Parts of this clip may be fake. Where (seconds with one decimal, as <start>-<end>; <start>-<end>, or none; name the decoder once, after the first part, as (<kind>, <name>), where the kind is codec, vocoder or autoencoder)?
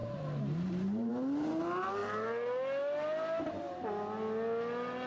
0.0-1.1 (vocoder, BigVGAN v2)